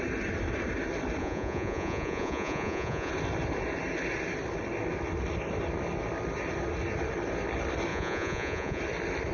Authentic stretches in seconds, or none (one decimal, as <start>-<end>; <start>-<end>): 0.0-1.2; 3.1-7.9; 8.8-9.3